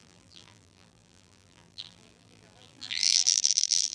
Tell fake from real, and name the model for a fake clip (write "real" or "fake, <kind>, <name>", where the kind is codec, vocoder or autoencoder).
fake, vocoder, BigVGAN v2